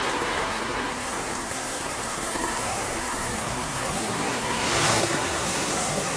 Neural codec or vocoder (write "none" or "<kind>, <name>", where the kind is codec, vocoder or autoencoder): codec, SNAC